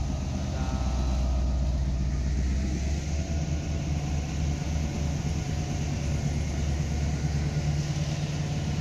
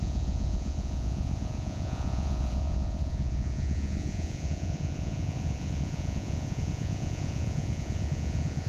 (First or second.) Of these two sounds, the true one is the first